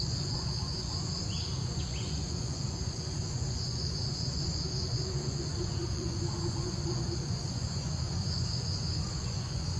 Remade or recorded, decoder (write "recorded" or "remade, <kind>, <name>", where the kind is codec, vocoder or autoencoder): remade, vocoder, Vocos